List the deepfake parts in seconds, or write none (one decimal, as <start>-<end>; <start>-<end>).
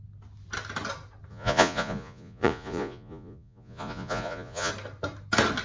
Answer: 1.3-4.7